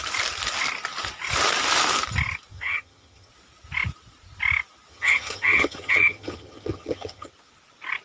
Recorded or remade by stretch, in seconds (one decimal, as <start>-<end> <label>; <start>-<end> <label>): 0.0-2.5 recorded; 2.5-3.3 remade; 3.3-4.9 recorded; 4.9-7.3 remade; 7.3-8.0 recorded